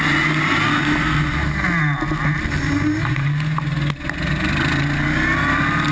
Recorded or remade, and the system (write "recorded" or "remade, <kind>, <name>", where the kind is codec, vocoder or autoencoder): recorded